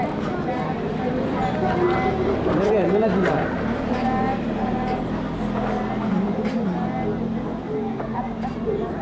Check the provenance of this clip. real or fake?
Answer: real